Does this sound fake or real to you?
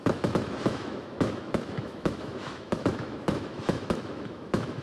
fake